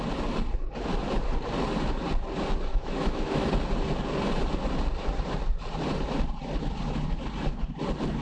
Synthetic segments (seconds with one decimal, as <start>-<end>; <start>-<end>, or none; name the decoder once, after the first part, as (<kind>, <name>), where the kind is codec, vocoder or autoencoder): 2.7-3.5 (autoencoder, DAC-VAE)